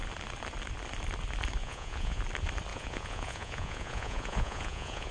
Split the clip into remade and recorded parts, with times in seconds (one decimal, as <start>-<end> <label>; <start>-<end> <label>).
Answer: 0.0-1.6 recorded; 1.6-2.2 remade; 2.2-2.7 recorded; 2.7-5.1 remade